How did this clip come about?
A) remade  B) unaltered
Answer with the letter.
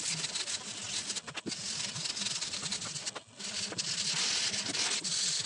B